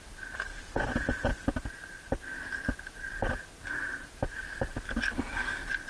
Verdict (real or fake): real